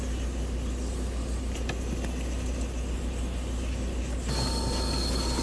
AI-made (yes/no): no